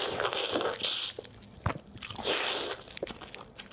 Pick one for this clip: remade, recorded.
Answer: recorded